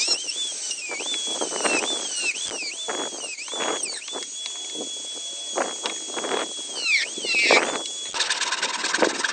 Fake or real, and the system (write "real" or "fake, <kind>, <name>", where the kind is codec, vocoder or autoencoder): real